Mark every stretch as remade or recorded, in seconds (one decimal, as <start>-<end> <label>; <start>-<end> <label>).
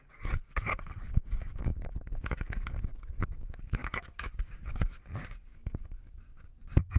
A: 0.0-7.0 remade